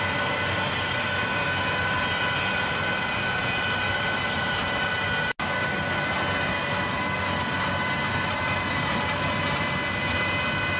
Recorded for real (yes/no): yes